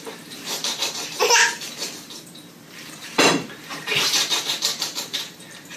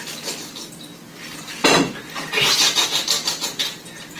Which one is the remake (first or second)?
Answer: first